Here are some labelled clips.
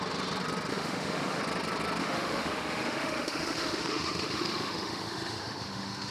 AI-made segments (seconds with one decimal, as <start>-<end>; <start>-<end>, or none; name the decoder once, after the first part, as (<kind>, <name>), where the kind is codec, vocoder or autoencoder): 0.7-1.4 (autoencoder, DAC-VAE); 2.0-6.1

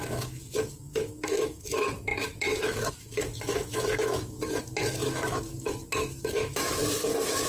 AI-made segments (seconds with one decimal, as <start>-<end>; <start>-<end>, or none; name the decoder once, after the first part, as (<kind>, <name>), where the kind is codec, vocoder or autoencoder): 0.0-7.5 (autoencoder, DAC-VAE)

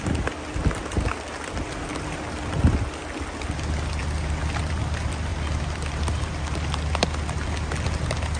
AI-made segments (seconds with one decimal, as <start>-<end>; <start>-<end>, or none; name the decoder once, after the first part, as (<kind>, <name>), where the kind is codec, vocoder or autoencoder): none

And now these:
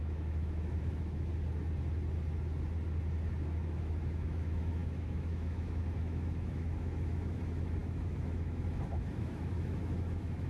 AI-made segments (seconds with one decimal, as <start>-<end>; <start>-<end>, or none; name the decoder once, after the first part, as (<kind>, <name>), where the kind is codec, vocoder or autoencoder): 0.0-1.3 (autoencoder, DAC-VAE); 3.4-10.5

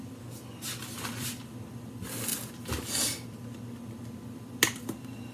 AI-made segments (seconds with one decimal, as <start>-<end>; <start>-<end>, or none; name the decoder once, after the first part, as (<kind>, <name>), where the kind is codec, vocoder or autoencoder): none